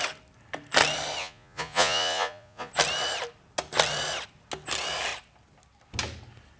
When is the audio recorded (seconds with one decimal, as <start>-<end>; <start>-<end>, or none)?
0.0-1.2; 2.7-6.6